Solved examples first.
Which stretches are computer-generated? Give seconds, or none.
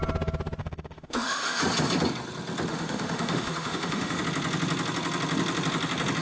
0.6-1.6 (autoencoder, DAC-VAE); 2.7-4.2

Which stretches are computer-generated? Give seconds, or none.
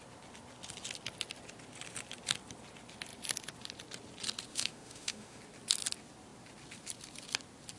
4.5-5.4 (autoencoder, DAC-VAE)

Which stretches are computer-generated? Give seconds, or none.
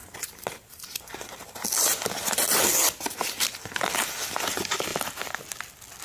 none